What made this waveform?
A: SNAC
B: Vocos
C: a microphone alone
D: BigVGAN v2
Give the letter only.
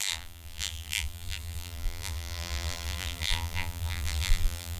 D